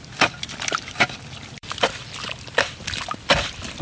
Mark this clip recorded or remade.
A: remade